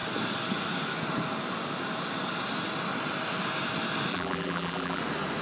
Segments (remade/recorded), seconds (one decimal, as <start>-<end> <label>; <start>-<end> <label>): 0.0-4.1 recorded; 4.1-5.0 remade; 5.0-5.4 recorded